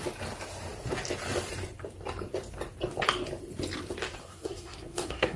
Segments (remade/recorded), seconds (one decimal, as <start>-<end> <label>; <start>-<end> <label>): 0.0-4.2 recorded; 4.2-5.4 remade